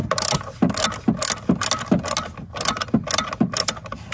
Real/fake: real